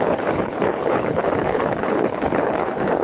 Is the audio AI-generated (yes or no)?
yes